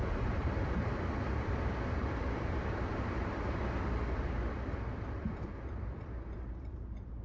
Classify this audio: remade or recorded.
remade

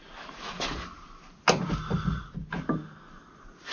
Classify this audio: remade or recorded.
recorded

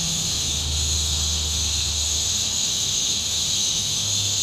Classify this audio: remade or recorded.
remade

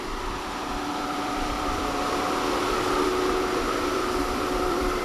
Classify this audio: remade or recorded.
remade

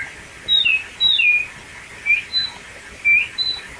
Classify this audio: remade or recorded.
recorded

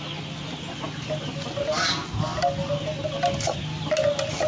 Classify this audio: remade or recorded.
recorded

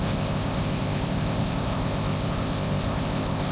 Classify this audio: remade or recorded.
remade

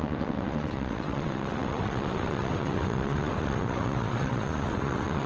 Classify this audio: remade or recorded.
remade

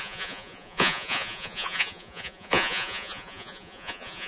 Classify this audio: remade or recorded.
remade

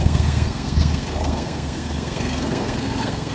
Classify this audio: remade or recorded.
remade